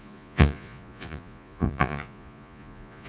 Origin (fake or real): fake